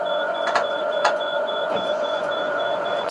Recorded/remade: remade